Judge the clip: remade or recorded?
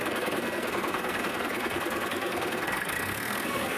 remade